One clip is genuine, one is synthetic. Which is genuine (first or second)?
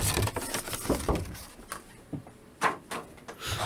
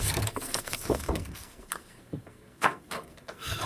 first